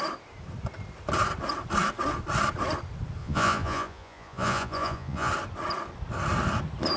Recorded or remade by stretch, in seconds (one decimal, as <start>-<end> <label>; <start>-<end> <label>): 0.0-3.2 recorded; 3.2-5.3 remade; 5.3-7.0 recorded